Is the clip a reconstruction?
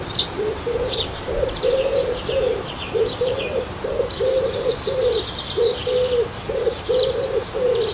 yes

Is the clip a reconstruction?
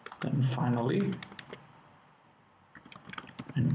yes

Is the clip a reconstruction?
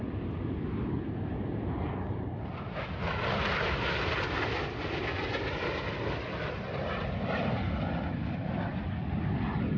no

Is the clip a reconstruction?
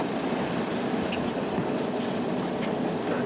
yes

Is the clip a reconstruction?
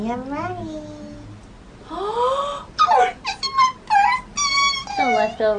no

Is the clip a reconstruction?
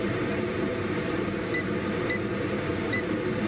yes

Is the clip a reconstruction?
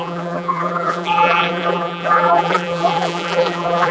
yes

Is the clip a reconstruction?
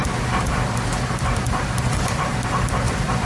yes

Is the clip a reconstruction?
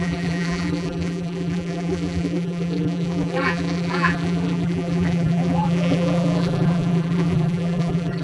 yes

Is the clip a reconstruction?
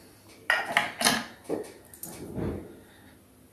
no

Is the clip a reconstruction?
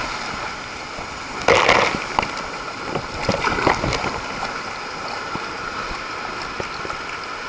no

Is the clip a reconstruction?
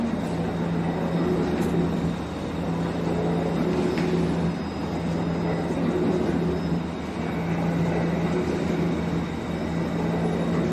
no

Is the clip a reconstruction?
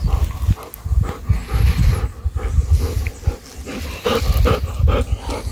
no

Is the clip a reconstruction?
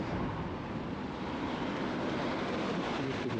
yes